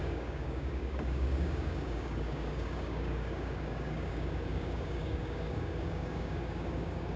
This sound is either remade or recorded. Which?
remade